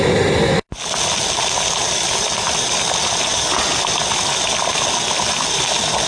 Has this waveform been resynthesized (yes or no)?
no